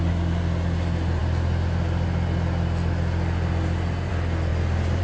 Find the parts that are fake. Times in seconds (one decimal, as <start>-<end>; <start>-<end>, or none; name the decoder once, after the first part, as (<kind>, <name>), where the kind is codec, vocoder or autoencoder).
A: none